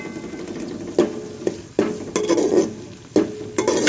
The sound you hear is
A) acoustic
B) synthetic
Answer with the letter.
A